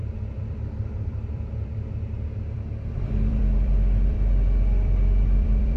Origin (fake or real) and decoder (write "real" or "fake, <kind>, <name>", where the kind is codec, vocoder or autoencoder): fake, vocoder, BigVGAN v2